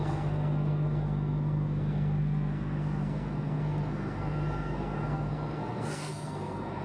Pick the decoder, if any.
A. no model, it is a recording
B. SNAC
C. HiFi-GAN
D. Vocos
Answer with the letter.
B